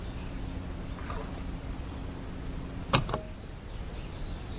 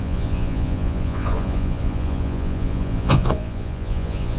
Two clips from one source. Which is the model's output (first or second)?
second